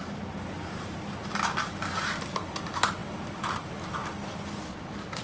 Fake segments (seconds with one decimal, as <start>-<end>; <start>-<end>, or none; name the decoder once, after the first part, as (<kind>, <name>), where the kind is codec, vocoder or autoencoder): none